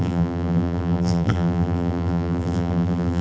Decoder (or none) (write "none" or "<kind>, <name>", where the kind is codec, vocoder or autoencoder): vocoder, BigVGAN v2